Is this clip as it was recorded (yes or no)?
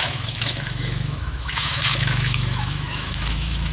no